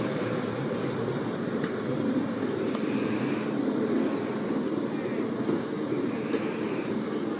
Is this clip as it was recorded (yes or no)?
yes